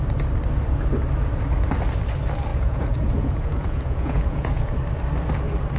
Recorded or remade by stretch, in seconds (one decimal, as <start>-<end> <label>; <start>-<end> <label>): 0.0-2.5 recorded; 2.5-4.7 remade; 4.7-5.8 recorded